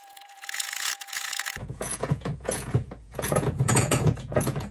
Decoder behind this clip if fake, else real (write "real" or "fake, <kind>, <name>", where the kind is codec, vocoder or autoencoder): fake, vocoder, Vocos